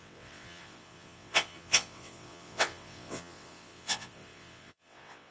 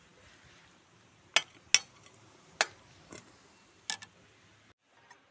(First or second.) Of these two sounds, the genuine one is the second